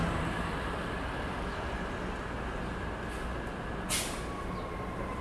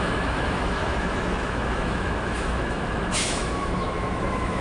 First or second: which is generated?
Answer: second